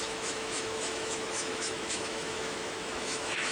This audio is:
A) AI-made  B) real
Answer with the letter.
A